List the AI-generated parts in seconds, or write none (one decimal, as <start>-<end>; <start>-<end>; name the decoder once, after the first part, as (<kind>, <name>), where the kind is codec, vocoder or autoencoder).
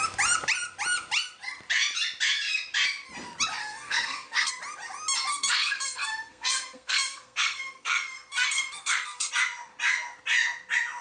3.6-4.5 (codec, SNAC); 5.3-9.3